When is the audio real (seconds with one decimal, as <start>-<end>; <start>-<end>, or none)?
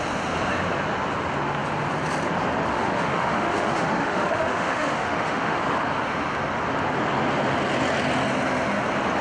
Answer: 0.0-2.7; 5.6-9.2